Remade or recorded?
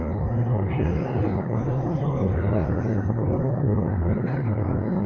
remade